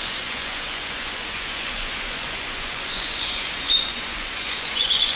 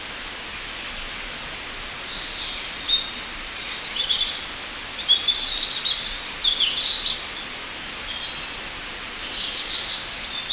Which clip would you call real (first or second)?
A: second